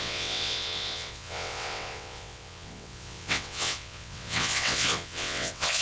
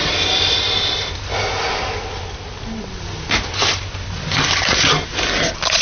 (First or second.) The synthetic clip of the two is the first